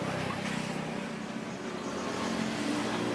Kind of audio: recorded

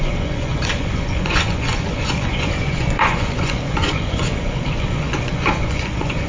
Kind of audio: remade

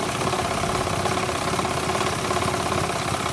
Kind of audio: recorded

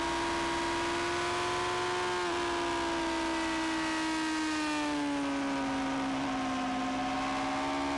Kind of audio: recorded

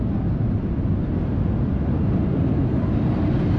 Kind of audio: recorded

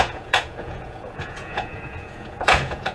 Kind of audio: remade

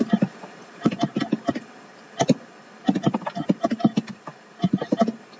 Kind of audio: recorded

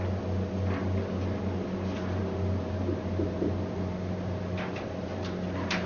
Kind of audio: recorded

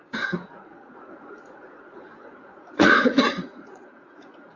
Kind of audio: remade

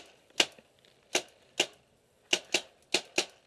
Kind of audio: recorded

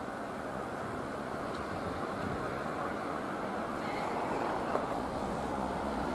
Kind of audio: remade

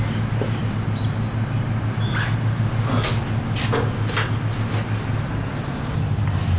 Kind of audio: recorded